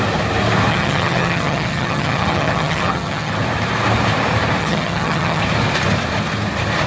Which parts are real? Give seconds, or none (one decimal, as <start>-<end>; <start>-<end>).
0.0-0.7; 3.3-4.6; 5.4-6.9